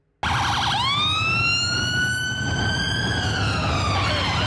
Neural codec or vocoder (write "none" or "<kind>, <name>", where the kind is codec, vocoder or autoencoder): none